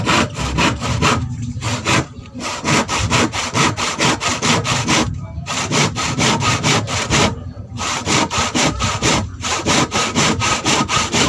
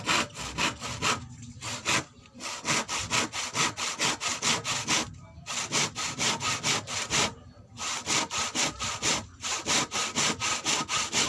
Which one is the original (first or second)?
second